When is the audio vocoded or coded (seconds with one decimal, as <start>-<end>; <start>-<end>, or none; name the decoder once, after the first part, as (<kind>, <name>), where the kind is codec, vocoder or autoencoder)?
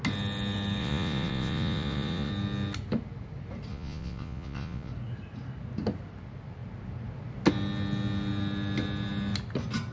0.8-2.3 (vocoder, Vocos); 3.7-4.9